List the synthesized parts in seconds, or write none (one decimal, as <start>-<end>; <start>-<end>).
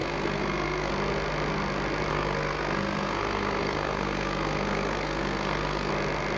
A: 0.0-0.9; 2.1-5.9